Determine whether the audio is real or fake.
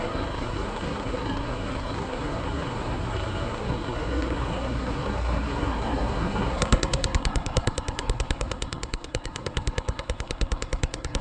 fake